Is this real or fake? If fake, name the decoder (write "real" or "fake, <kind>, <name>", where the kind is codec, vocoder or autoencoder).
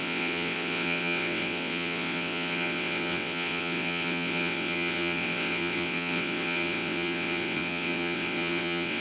fake, vocoder, WaveNeXt